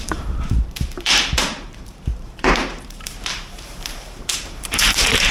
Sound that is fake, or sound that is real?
fake